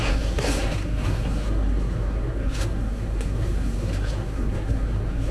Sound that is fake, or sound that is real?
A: fake